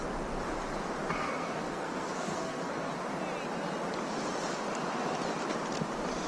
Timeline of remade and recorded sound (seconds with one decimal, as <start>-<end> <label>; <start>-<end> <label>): 0.0-1.2 recorded; 1.2-2.9 remade; 2.9-6.3 recorded